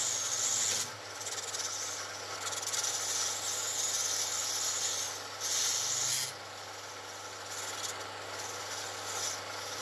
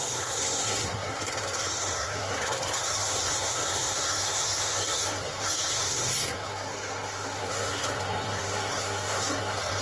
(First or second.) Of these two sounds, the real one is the first